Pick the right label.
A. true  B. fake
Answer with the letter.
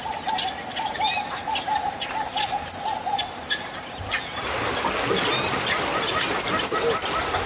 A